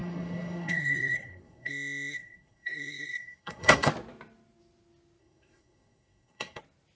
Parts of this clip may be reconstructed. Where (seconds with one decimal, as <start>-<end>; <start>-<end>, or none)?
0.0-3.9; 5.2-6.6